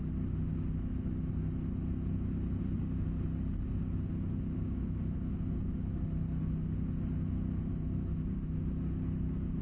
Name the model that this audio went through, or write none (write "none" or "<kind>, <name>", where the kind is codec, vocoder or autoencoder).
none